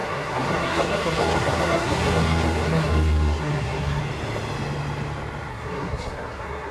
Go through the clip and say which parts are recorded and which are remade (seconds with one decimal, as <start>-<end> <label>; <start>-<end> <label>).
0.0-4.0 remade; 4.0-5.5 recorded; 5.5-6.7 remade